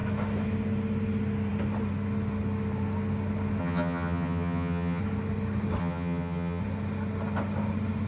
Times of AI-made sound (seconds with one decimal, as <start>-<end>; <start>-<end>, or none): 3.6-5.0; 5.8-6.6